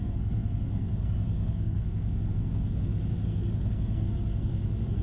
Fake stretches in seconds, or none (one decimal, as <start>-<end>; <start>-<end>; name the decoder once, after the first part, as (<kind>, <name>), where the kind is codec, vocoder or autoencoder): 0.0-5.0 (codec, SNAC)